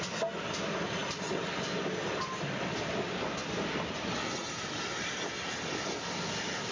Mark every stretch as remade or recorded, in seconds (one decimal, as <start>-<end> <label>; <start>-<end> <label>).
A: 0.0-6.7 recorded